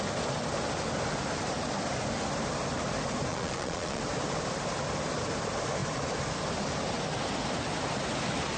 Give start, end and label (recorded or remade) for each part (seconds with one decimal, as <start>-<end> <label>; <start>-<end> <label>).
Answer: 0.0-3.3 recorded; 3.3-4.0 remade; 4.0-8.6 recorded